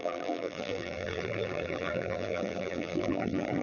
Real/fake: fake